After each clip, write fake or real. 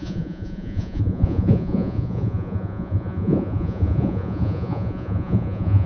fake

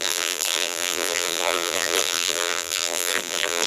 fake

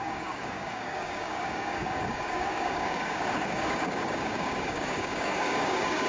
fake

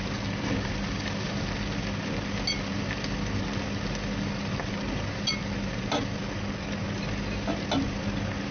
real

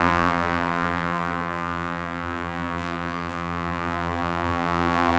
fake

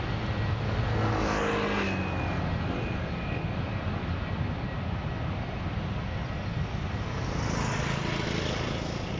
real